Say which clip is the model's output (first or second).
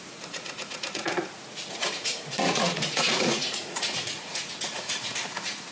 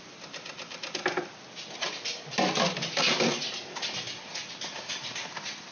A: first